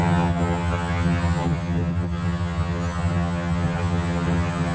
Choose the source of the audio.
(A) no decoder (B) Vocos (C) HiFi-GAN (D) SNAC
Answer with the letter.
C